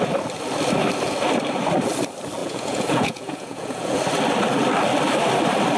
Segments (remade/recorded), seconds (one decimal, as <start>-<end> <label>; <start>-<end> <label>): 0.0-2.4 recorded; 2.4-4.0 remade; 4.0-5.8 recorded